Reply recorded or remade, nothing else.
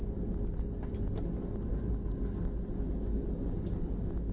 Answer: recorded